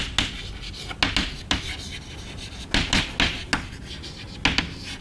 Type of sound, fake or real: real